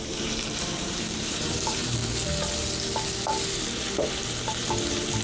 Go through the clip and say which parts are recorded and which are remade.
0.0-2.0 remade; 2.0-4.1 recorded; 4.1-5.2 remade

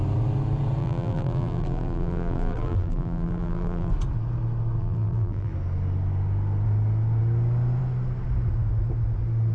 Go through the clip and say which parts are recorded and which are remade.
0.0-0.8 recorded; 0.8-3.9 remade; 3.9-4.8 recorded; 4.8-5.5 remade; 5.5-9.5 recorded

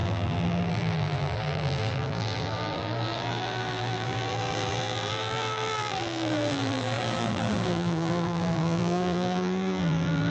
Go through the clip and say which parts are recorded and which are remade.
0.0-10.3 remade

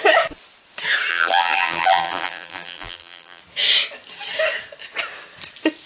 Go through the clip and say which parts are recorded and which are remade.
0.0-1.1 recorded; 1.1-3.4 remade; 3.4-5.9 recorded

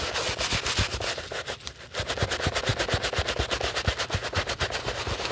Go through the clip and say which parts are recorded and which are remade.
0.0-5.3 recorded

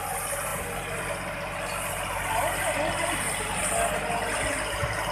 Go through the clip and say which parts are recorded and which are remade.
0.0-5.1 recorded

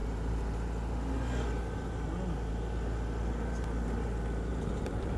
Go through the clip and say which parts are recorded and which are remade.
0.0-4.5 recorded; 4.5-5.2 remade